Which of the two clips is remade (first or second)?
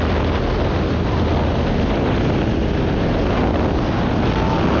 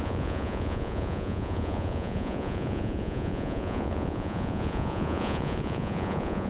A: second